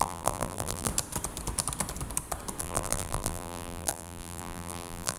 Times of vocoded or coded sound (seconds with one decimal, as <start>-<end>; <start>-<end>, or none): 0.0-0.9; 2.6-5.2